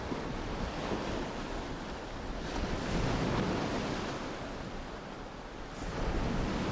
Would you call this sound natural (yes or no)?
yes